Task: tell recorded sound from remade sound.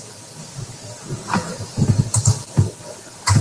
recorded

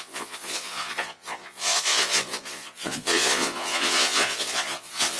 remade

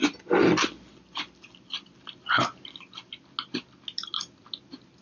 recorded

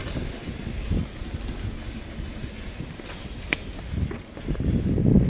recorded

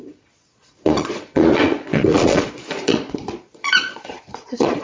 remade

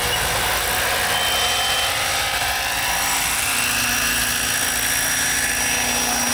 recorded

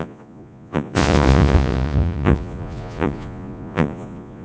remade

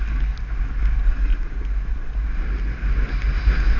recorded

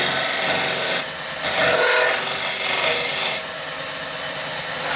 recorded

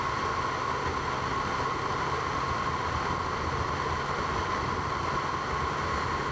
recorded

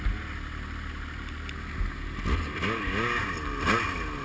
recorded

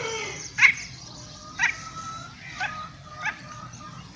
recorded